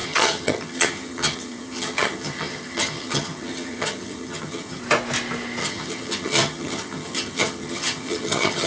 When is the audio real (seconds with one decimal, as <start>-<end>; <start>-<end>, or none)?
4.8-5.6